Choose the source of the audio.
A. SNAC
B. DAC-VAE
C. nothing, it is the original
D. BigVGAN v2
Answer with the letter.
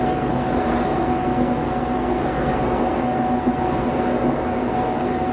A